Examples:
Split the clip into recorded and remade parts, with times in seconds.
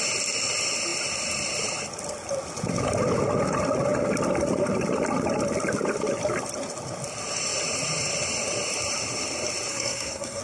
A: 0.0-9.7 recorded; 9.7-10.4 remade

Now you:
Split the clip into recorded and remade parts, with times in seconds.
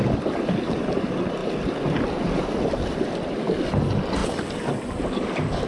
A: 0.0-5.7 recorded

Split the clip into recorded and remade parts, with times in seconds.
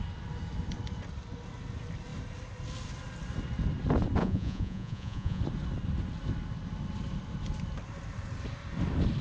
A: 0.0-4.2 recorded; 4.2-5.4 remade; 5.4-9.2 recorded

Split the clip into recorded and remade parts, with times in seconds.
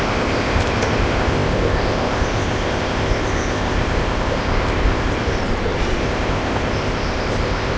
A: 0.0-5.4 remade; 5.4-6.0 recorded; 6.0-7.8 remade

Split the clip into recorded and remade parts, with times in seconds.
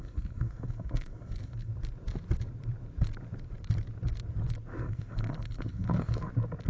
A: 0.0-1.7 remade; 1.7-4.7 recorded; 4.7-6.3 remade; 6.3-6.7 recorded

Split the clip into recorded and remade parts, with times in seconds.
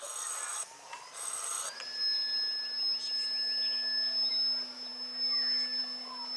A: 0.0-6.4 recorded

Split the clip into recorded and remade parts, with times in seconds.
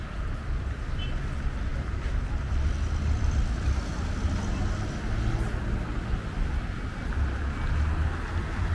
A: 0.0-8.7 recorded